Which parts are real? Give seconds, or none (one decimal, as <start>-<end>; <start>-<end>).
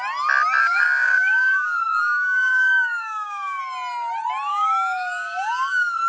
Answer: 0.0-0.6; 3.6-4.5